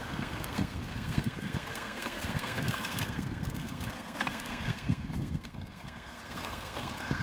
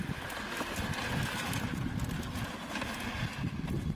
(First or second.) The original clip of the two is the second